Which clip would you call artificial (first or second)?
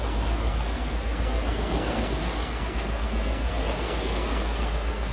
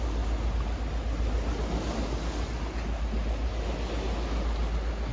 first